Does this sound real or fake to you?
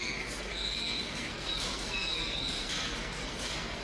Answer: fake